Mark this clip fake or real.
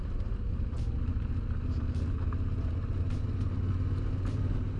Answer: real